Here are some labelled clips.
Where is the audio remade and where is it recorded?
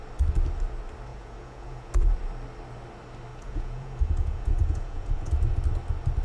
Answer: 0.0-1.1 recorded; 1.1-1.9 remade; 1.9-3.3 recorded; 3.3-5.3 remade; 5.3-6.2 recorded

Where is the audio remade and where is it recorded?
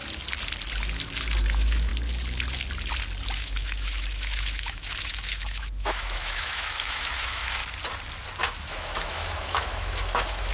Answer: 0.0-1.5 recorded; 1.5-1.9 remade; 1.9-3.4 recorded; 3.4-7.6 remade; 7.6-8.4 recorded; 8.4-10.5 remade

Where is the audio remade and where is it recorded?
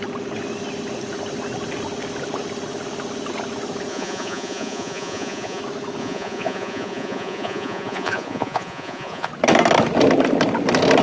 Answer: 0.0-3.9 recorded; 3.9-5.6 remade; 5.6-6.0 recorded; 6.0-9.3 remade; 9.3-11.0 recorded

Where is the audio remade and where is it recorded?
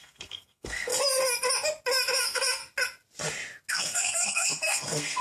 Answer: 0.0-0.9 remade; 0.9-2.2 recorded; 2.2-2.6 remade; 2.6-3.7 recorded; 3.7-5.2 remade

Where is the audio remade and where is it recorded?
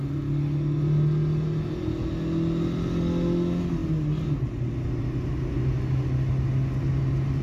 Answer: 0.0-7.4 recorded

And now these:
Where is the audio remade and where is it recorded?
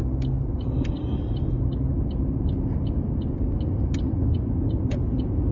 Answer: 0.0-5.5 recorded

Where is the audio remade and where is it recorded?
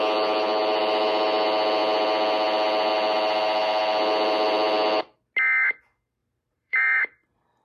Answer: 0.0-6.2 recorded; 6.2-7.0 remade; 7.0-7.6 recorded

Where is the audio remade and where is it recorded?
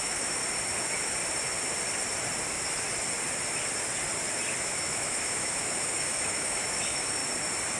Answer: 0.0-0.4 remade; 0.4-4.6 recorded; 4.6-7.2 remade; 7.2-7.8 recorded